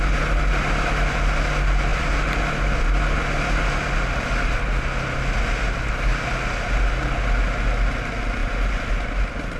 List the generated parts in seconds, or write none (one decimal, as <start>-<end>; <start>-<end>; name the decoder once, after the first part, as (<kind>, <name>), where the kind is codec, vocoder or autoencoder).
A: none

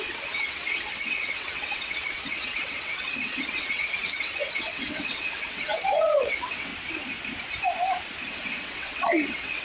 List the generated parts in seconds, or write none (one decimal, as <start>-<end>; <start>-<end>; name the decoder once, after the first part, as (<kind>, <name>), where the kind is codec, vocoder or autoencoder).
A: 0.0-6.7 (vocoder, WaveNeXt); 8.3-9.6